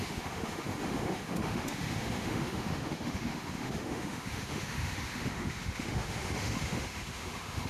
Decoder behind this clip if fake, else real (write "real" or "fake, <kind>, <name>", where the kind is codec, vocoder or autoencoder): fake, autoencoder, DAC-VAE